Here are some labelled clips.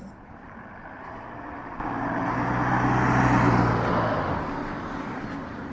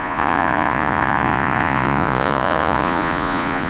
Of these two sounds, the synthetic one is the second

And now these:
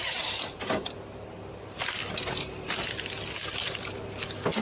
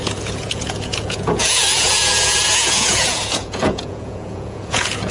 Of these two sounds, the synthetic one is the second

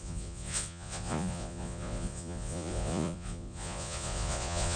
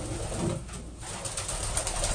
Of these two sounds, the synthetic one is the first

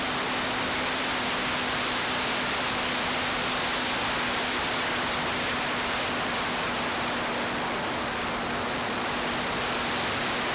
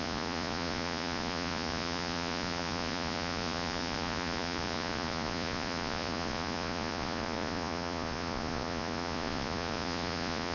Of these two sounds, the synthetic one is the second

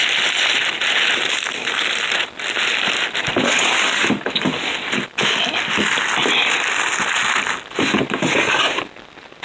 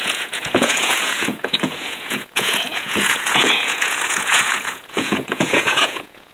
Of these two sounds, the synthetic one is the second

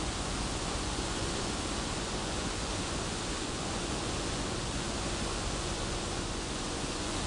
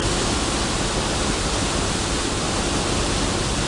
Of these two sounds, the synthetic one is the first